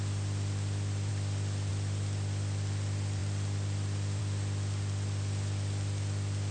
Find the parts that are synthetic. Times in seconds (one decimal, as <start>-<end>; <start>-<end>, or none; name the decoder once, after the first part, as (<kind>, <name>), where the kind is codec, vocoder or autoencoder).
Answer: none